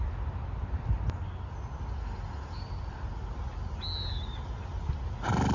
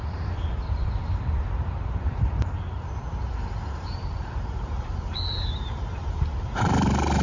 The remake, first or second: second